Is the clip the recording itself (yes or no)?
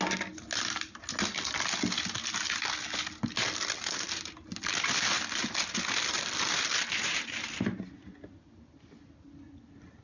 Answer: yes